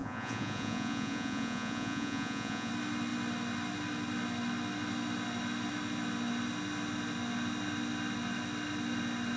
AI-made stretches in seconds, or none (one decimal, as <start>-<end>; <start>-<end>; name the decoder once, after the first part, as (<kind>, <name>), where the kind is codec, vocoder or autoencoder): 0.0-2.7 (vocoder, Vocos)

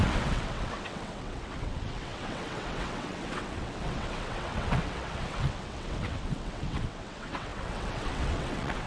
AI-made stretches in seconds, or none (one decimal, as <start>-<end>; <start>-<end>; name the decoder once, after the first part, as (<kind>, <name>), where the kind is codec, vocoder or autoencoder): 0.0-8.9 (vocoder, WaveNeXt)

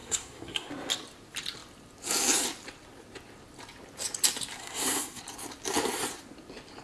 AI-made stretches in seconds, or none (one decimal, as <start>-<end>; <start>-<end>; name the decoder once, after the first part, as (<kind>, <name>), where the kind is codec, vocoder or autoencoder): 0.0-0.7 (codec, SNAC); 4.6-5.2

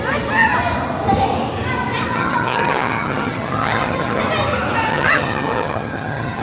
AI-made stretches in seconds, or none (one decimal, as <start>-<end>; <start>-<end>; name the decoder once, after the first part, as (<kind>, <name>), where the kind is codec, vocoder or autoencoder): 2.1-4.2 (vocoder, HiFi-GAN); 4.9-6.4